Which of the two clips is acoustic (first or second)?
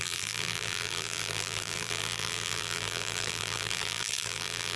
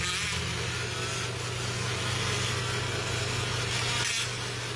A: second